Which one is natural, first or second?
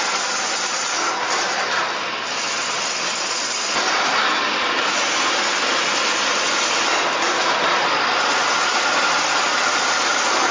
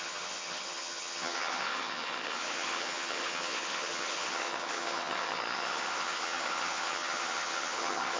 first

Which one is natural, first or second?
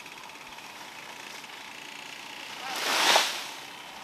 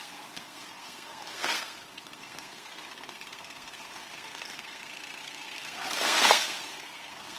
first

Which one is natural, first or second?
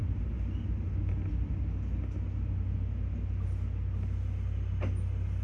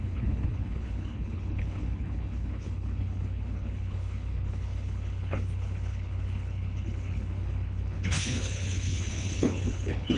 first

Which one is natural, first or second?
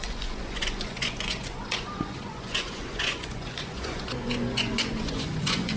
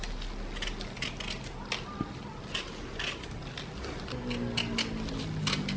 second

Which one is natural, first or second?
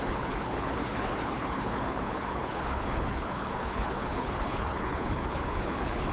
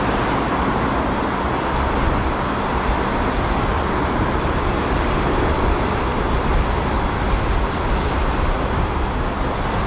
second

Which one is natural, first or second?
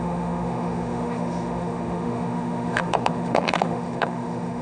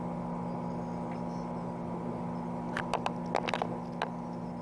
second